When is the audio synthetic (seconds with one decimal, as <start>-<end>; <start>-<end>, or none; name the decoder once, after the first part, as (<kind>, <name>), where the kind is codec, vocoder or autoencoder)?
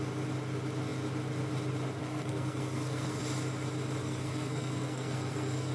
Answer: 2.0-3.2 (codec, SNAC); 4.0-5.7